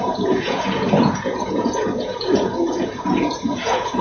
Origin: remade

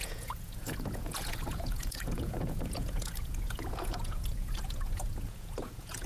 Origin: remade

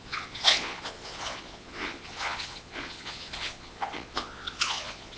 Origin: remade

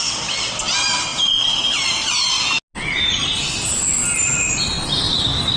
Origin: recorded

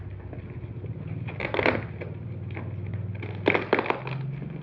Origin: recorded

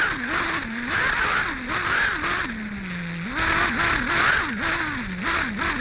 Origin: recorded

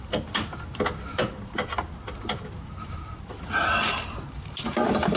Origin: recorded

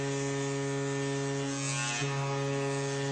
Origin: recorded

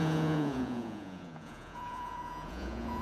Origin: remade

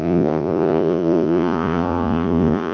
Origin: remade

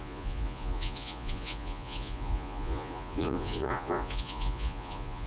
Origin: remade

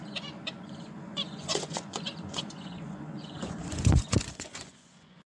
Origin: remade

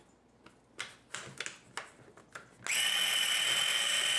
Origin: recorded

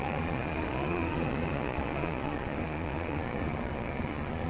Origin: remade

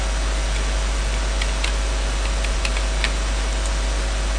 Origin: recorded